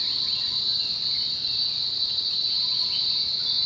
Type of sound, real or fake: real